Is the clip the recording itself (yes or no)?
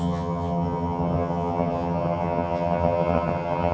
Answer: no